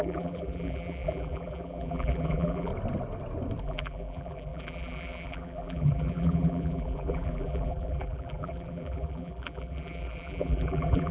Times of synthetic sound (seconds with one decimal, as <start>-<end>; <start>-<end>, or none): 0.0-2.7; 3.6-11.1